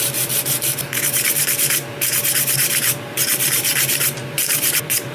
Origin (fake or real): fake